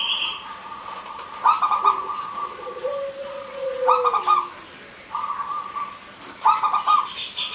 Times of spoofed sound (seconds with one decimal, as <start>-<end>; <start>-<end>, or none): 3.2-3.9